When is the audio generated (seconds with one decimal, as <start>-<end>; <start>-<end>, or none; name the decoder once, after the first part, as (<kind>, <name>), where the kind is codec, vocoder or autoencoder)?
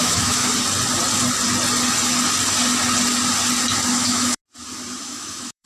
0.0-0.5 (autoencoder, DAC-VAE); 3.9-4.4; 5.0-5.7